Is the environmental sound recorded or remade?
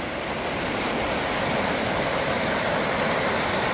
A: recorded